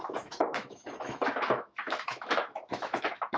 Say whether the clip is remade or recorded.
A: remade